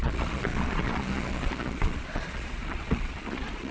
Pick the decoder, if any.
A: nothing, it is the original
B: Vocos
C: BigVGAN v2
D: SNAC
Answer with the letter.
B